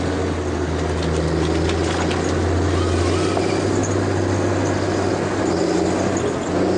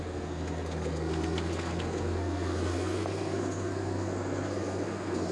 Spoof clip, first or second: second